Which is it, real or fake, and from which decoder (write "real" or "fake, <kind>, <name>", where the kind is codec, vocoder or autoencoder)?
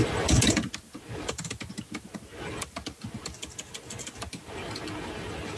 real